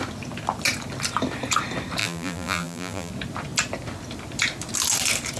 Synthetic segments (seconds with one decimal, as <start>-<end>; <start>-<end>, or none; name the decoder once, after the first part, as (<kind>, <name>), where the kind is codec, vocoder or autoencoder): 2.0-3.1 (vocoder, BigVGAN v2)